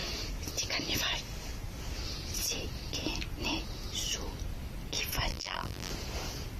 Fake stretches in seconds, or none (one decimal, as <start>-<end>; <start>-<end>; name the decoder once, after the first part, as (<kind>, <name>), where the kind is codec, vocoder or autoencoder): 5.3-5.9 (vocoder, BigVGAN v2)